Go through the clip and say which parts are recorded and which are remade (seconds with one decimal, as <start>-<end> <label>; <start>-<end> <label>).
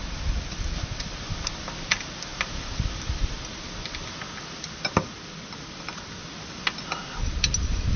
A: 0.0-8.0 recorded